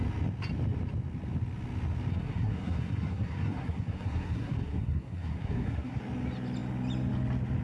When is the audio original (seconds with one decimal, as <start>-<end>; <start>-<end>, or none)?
0.0-2.1; 6.0-7.6